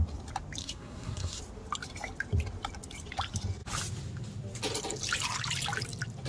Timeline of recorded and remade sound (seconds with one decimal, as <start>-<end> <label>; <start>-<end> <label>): 0.0-0.6 recorded; 0.6-1.4 remade; 1.4-6.3 recorded